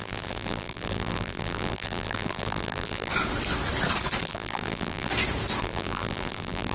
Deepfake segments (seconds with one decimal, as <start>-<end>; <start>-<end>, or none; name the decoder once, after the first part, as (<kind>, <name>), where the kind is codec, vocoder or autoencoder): 0.0-3.1 (vocoder, BigVGAN v2); 4.2-5.1; 5.6-6.7